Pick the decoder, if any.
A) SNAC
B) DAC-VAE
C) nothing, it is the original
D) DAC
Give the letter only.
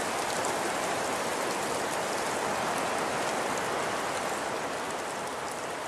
C